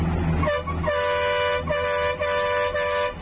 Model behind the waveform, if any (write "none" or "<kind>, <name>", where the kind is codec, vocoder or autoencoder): none